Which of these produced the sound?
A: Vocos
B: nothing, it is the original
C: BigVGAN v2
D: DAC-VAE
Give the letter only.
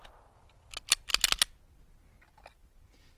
B